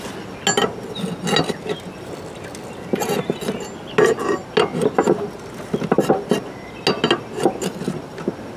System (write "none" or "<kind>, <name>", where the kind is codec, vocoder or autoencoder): none